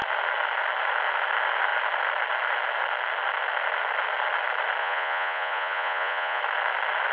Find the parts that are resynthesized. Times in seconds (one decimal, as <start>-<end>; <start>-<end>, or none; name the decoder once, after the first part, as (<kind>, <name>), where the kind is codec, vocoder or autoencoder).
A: 4.8-6.4 (vocoder, Vocos)